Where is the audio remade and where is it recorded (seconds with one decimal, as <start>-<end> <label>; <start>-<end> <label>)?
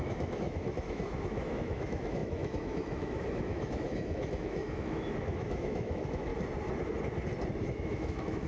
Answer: 0.0-6.3 remade; 6.3-7.6 recorded; 7.6-8.5 remade